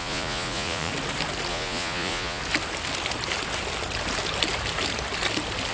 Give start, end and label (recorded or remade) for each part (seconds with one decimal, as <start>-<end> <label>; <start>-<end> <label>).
0.0-0.9 remade; 0.9-1.5 recorded; 1.5-2.4 remade; 2.4-5.7 recorded